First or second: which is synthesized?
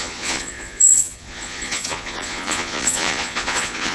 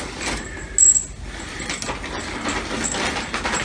first